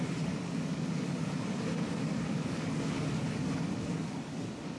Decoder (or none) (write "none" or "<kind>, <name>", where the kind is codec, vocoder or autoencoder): codec, DAC